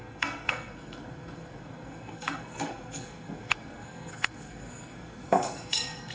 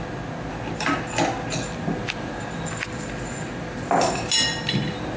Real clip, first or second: second